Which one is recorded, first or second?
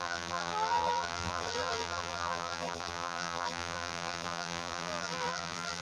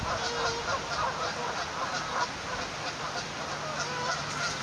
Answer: second